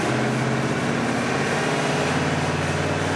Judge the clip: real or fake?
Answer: real